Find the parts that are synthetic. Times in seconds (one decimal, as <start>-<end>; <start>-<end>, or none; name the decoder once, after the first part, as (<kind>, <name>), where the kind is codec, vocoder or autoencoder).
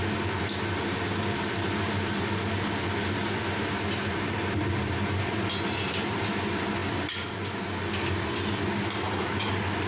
none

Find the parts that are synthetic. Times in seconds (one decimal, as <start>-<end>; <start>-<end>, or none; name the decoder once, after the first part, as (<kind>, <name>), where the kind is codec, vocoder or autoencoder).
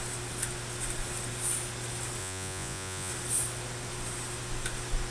2.2-3.1 (vocoder, Vocos)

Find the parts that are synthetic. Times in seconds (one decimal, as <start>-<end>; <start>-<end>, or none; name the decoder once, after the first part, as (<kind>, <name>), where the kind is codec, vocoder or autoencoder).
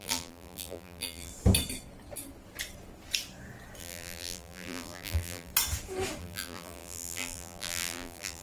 0.0-1.3 (vocoder, BigVGAN v2); 3.8-5.5; 6.2-8.4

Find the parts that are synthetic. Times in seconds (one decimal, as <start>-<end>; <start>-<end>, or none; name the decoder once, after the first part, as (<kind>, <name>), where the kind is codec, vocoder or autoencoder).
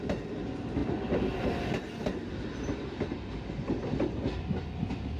none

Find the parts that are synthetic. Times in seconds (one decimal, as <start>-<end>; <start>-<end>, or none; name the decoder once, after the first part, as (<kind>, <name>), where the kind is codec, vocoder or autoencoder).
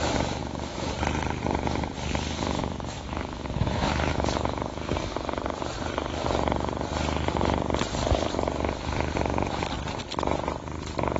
0.4-0.9 (autoencoder, DAC-VAE); 2.6-5.0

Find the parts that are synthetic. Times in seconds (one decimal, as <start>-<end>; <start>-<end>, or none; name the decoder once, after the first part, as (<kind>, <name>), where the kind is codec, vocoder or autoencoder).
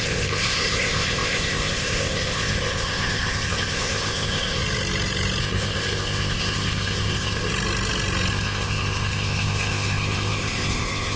0.0-4.6 (codec, ZipCodec); 5.4-7.5; 8.3-11.2